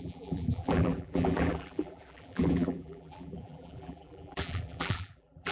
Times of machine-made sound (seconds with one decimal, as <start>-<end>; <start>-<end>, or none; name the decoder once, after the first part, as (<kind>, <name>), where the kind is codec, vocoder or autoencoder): 0.0-5.5 (vocoder, BigVGAN v2)